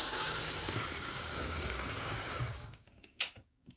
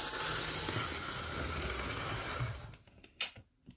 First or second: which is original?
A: second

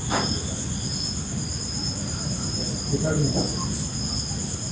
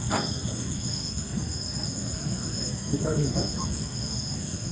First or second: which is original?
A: first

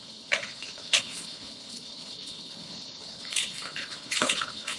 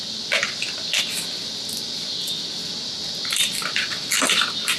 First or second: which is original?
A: second